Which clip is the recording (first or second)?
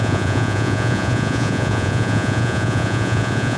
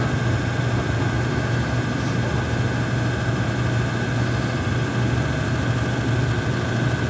second